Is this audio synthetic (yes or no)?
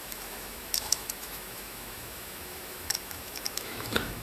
yes